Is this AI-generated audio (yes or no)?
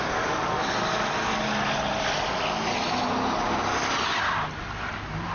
no